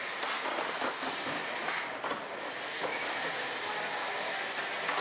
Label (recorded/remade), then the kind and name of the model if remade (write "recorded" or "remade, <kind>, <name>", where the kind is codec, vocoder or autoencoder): recorded